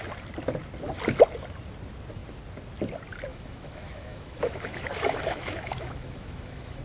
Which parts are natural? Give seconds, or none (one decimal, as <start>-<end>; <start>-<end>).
0.0-3.3